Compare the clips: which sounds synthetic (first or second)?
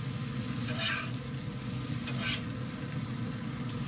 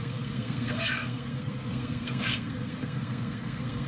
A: second